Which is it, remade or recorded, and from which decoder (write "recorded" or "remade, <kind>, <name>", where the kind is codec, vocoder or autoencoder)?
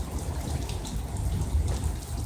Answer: recorded